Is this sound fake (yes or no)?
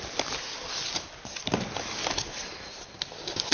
no